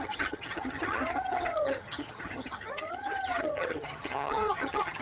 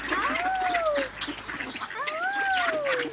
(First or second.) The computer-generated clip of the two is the first